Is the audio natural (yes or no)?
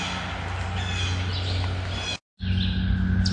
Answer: yes